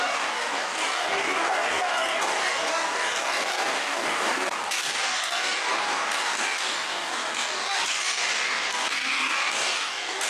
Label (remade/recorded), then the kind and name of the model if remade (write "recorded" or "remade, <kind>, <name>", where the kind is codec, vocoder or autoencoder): remade, codec, DAC